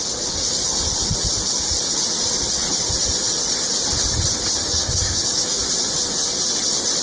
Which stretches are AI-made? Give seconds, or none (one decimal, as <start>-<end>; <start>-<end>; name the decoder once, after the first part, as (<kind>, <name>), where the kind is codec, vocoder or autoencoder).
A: 4.6-5.6 (codec, DAC)